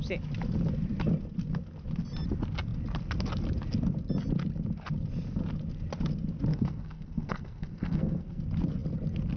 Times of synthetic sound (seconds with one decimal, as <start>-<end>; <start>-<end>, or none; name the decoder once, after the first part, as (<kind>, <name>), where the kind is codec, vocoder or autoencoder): 6.5-8.4 (codec, SNAC)